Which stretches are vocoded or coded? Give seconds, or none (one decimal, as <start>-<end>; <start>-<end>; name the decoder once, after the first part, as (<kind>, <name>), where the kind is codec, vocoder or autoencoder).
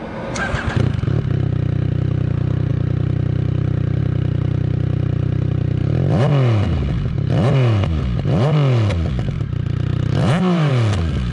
9.9-10.7 (vocoder, BigVGAN v2)